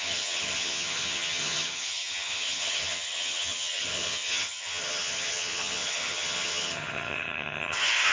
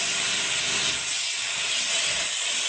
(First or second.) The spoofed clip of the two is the first